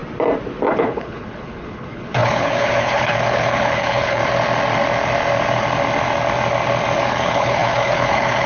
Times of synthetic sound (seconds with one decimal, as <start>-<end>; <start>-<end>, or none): 0.7-4.2; 7.1-8.5